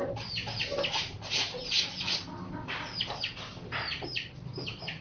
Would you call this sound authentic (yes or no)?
yes